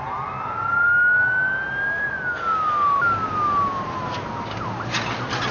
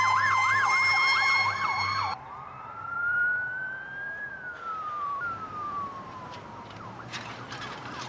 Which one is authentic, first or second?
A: first